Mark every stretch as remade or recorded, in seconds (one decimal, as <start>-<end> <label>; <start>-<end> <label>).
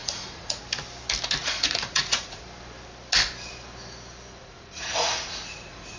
0.0-0.6 remade; 0.6-1.4 recorded; 1.4-2.4 remade; 2.4-4.4 recorded; 4.4-6.0 remade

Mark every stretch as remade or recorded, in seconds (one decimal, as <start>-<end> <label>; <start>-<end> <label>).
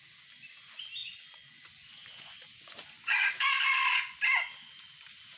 0.0-1.0 recorded; 1.0-4.2 remade; 4.2-5.4 recorded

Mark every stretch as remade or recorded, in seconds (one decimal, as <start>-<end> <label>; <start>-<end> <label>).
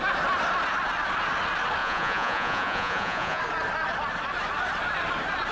0.0-1.8 recorded; 1.8-3.4 remade; 3.4-5.5 recorded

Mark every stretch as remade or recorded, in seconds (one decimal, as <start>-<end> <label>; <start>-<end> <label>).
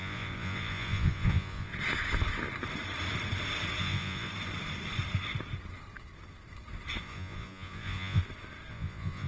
0.0-1.7 remade; 1.7-3.8 recorded; 3.8-4.3 remade; 4.3-7.0 recorded; 7.0-8.2 remade; 8.2-8.7 recorded; 8.7-9.3 remade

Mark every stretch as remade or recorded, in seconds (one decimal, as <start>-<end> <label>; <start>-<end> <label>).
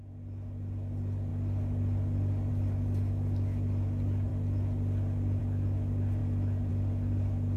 0.0-7.6 recorded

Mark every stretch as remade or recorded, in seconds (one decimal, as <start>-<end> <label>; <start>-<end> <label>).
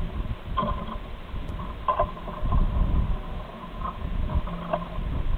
0.0-3.5 recorded; 3.5-4.3 remade; 4.3-5.4 recorded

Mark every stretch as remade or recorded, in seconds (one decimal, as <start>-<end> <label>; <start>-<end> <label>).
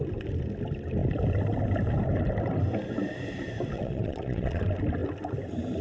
0.0-3.7 recorded; 3.7-4.6 remade; 4.6-5.8 recorded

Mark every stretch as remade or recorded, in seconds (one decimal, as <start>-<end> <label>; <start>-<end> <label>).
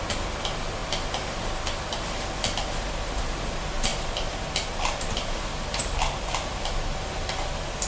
0.0-7.9 recorded